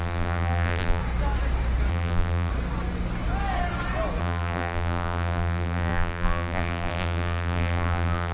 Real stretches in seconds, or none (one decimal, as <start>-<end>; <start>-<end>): 1.0-1.9; 2.5-4.2